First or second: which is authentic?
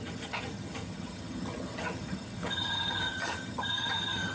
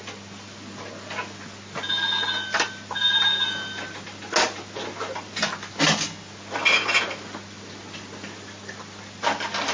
second